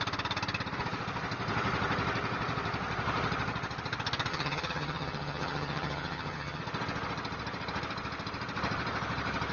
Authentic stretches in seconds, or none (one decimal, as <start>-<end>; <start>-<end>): 0.0-4.3; 6.6-9.5